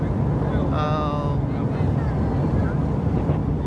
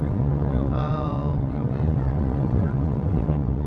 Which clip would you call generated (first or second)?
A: second